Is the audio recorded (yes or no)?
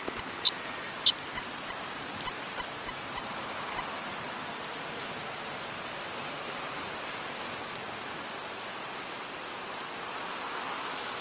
yes